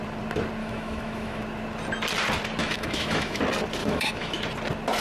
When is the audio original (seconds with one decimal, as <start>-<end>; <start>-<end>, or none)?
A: 0.0-0.6; 1.4-2.6; 3.4-3.8; 4.4-5.0